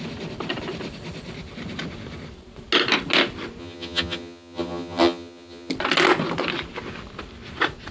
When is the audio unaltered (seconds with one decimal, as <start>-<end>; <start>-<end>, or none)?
0.0-3.6; 5.7-7.9